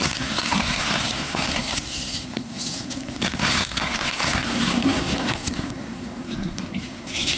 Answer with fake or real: fake